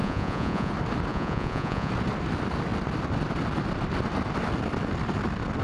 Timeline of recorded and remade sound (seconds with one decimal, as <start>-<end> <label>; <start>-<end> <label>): 0.0-0.7 remade; 0.7-1.1 recorded; 1.1-1.9 remade; 1.9-5.6 recorded